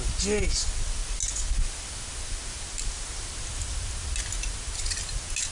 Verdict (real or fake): real